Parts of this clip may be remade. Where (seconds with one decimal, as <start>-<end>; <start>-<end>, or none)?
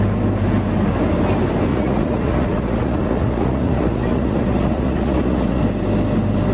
1.7-5.6